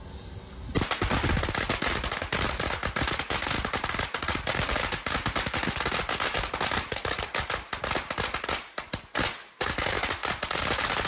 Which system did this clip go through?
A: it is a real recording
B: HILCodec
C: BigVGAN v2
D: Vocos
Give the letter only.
A